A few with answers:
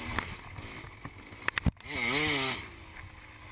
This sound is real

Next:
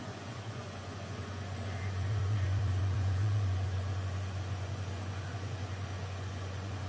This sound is fake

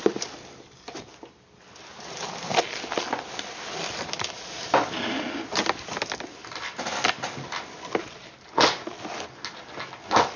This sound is real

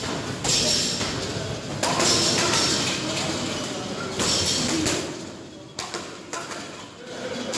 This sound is real